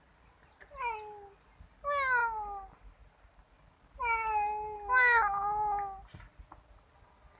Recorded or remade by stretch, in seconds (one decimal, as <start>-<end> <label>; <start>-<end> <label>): 0.0-2.2 recorded; 2.2-3.5 remade; 3.5-7.4 recorded